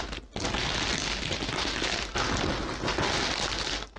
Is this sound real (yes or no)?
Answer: yes